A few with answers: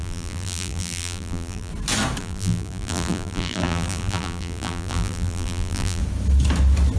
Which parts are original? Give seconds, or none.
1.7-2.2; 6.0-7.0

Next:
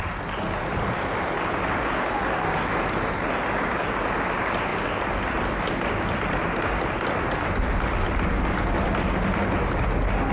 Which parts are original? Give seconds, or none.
0.0-4.7; 5.7-10.3

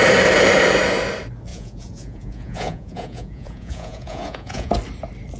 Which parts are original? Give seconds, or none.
0.0-1.5; 4.7-5.4

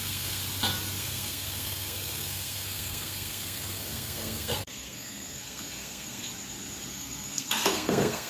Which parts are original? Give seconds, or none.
0.4-1.0; 6.3-6.9

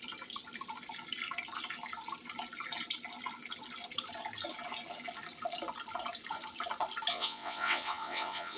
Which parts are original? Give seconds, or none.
0.0-7.1

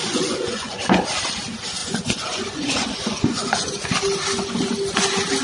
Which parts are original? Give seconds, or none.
0.8-1.8; 3.9-5.4

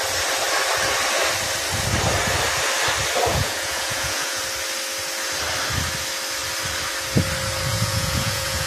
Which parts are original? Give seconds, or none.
0.0-3.3; 4.4-7.7

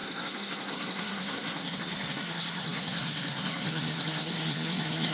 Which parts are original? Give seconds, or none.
none